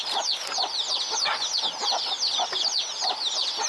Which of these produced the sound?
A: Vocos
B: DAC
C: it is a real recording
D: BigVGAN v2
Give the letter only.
C